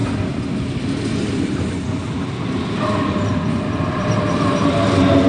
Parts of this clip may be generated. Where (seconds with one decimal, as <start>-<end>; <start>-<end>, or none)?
none